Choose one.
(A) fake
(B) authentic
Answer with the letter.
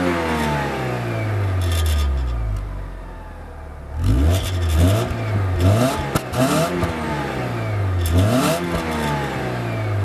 B